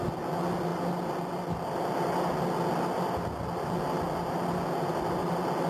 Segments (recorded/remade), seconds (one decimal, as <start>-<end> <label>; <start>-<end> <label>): 0.0-5.7 recorded